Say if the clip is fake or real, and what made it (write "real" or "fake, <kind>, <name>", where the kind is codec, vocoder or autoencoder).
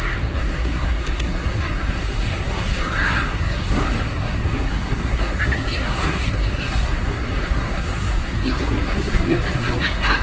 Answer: fake, codec, SNAC